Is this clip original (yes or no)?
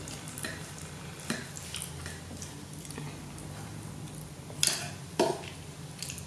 yes